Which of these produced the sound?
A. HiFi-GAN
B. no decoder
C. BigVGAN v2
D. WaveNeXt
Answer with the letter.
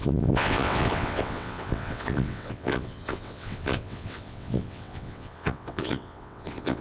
D